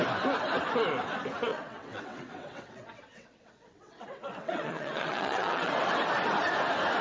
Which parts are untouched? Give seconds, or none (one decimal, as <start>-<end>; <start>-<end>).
0.0-1.5; 5.7-7.0